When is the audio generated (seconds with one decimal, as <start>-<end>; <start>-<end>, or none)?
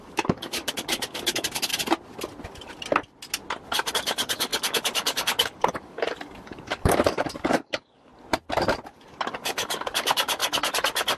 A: 0.0-1.7; 3.9-8.1; 8.9-10.4